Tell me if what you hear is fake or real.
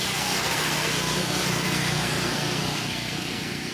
fake